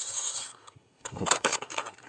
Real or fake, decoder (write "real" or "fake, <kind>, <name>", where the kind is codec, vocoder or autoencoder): fake, codec, SNAC